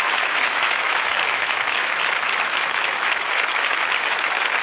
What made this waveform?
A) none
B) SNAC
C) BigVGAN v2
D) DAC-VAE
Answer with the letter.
D